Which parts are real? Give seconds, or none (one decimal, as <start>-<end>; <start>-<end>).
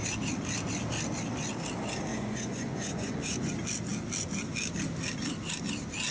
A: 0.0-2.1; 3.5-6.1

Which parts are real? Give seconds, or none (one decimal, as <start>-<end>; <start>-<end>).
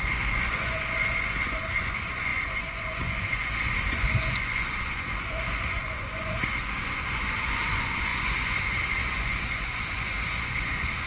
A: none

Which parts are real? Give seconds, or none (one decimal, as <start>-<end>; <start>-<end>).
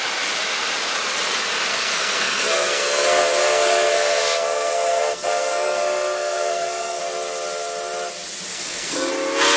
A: 0.0-1.7; 7.0-8.5; 9.1-9.6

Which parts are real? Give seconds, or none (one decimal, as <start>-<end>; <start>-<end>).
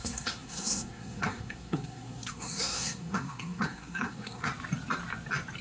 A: 4.5-5.6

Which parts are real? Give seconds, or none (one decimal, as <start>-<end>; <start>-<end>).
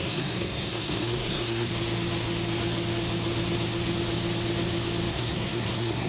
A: 1.7-5.1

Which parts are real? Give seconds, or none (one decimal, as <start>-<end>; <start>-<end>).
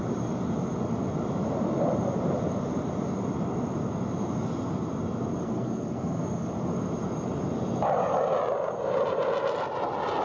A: 0.0-5.4; 6.5-10.2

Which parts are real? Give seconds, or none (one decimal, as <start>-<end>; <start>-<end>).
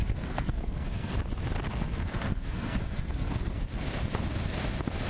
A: 1.2-1.7; 3.6-5.1